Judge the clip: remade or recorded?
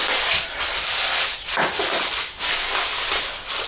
recorded